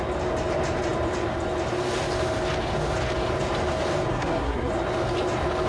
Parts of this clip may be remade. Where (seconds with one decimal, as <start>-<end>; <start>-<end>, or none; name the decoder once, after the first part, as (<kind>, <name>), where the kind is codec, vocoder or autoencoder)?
4.1-4.7 (codec, SNAC)